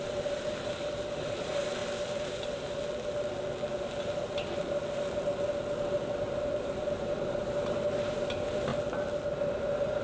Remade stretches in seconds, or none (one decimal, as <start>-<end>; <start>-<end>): none